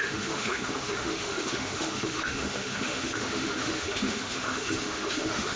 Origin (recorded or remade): remade